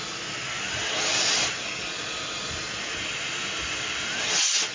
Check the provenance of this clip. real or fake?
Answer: real